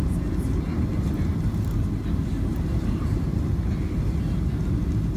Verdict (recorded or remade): recorded